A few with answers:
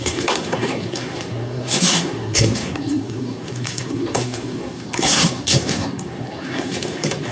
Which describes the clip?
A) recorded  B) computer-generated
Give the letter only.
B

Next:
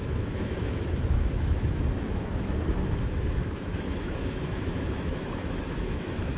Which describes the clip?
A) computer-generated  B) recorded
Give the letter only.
A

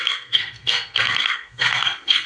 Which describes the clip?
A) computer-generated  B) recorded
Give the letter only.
A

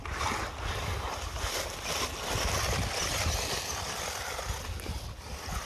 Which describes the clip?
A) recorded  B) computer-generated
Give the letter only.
A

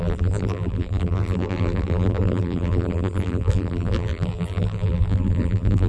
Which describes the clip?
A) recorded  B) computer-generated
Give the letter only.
B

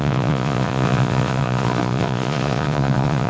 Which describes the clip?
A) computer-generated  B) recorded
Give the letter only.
A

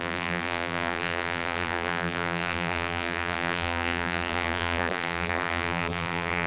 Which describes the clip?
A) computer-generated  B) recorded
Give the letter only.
A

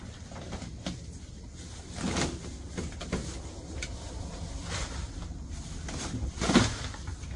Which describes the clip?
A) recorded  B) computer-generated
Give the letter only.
A